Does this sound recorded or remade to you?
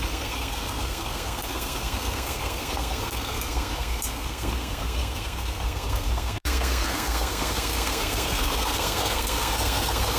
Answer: remade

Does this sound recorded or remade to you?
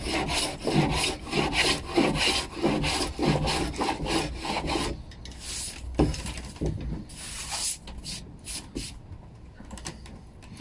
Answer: recorded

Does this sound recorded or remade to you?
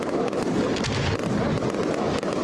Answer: recorded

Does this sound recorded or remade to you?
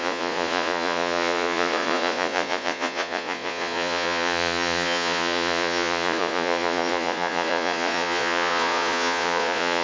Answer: remade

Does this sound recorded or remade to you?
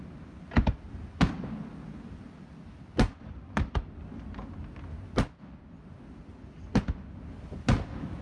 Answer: recorded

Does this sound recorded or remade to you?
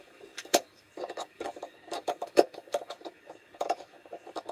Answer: remade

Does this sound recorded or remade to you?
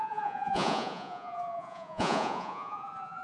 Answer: remade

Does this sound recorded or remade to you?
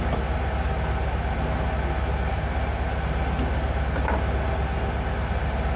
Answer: recorded